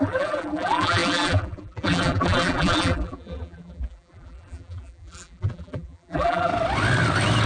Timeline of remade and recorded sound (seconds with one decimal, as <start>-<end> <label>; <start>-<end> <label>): 0.0-6.5 remade; 6.5-7.5 recorded